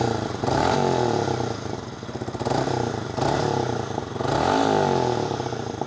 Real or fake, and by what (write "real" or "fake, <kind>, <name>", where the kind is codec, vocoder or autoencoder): real